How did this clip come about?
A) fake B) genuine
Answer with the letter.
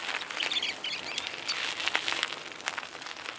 B